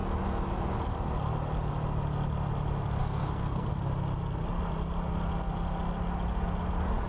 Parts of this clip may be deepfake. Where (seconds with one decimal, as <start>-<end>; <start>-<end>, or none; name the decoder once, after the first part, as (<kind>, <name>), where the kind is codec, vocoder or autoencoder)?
3.0-3.7 (codec, SNAC)